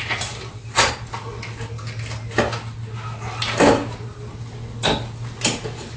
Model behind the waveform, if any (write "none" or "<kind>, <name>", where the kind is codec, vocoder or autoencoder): none